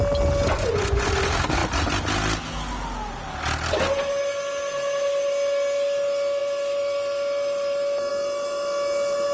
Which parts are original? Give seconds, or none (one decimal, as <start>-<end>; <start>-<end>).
0.0-0.5; 1.1-9.3